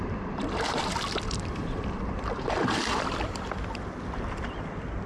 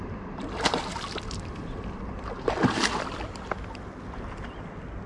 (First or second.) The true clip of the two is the second